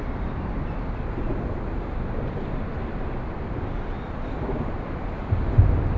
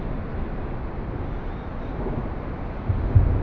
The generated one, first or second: first